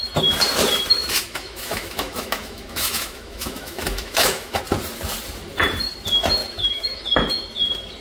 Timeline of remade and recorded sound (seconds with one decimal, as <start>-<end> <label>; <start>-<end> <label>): 0.0-1.0 recorded; 1.0-4.6 remade; 4.6-6.4 recorded; 6.4-7.0 remade; 7.0-8.0 recorded